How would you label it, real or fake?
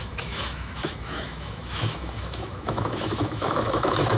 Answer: fake